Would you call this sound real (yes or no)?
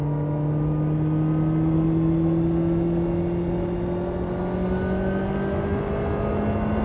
yes